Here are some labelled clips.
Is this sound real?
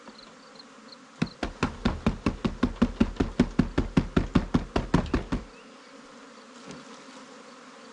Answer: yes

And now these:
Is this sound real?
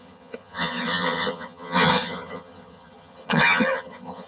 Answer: no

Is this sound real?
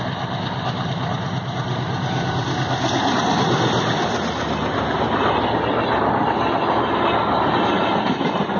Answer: yes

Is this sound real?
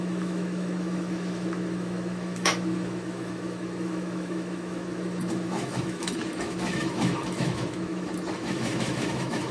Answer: no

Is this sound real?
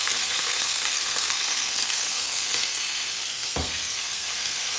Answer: no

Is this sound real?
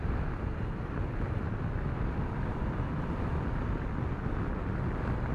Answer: no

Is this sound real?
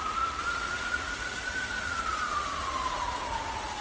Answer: no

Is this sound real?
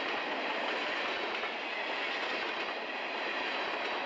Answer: yes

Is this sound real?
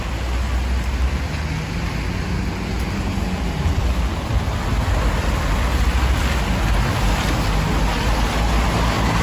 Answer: yes